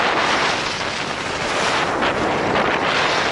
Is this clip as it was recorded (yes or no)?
yes